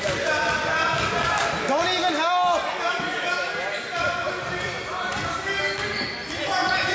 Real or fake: real